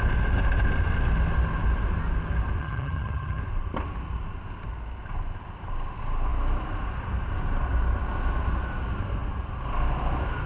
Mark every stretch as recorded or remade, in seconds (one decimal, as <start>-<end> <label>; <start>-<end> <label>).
0.0-2.6 recorded; 2.6-3.4 remade; 3.4-10.5 recorded